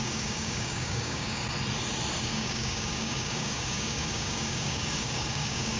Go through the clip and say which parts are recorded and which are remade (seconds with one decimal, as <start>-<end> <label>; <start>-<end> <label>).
0.0-1.4 remade; 1.4-2.2 recorded; 2.2-5.8 remade